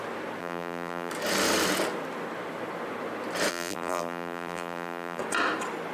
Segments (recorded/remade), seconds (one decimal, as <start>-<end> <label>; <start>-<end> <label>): 0.0-0.4 recorded; 0.4-1.1 remade; 1.1-3.5 recorded; 3.5-5.2 remade; 5.2-5.9 recorded

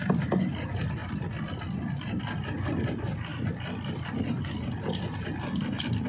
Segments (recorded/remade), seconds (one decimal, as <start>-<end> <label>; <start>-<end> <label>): 0.0-1.0 recorded; 1.0-2.0 remade; 2.0-6.1 recorded

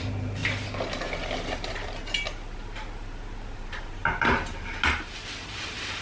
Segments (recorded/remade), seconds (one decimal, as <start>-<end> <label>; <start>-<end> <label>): 0.0-0.4 remade; 0.4-3.5 recorded; 3.5-4.0 remade; 4.0-5.4 recorded; 5.4-6.0 remade

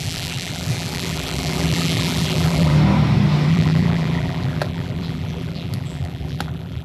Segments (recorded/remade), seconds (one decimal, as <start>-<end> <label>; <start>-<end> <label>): 0.0-2.7 remade; 2.7-3.5 recorded; 3.5-6.8 remade

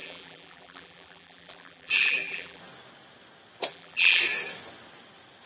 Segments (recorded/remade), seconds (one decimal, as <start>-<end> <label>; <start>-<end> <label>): 0.0-2.6 remade; 2.6-3.7 recorded; 3.7-4.2 remade; 4.2-5.5 recorded

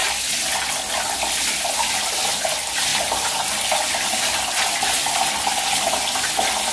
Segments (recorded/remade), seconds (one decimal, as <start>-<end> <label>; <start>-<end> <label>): 0.0-6.7 recorded

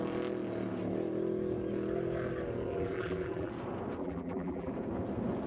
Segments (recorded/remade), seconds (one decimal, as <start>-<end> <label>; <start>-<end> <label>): 0.0-2.7 recorded; 2.7-3.5 remade; 3.5-4.0 recorded; 4.0-4.7 remade; 4.7-5.5 recorded